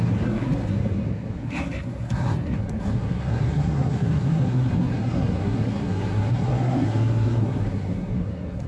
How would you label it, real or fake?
fake